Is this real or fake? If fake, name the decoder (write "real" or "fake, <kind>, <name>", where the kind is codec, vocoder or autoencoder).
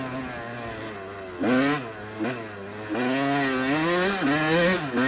real